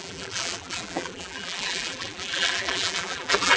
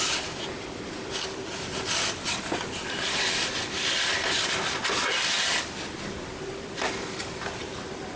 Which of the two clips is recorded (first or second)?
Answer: second